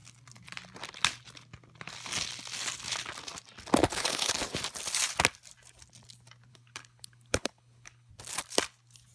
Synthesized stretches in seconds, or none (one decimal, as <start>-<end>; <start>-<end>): 3.8-4.3; 6.5-8.1